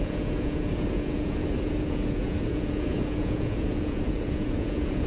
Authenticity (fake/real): fake